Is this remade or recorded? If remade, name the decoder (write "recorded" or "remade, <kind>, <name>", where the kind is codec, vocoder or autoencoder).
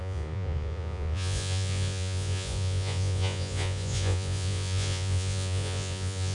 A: remade, vocoder, Vocos